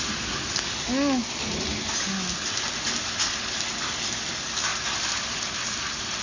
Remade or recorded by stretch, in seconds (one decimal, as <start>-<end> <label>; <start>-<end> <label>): 0.0-6.2 recorded